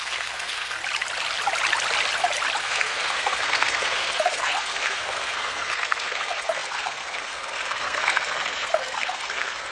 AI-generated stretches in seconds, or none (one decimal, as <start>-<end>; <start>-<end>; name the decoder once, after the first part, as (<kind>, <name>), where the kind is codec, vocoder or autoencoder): 0.0-0.8 (codec, SNAC); 2.6-9.7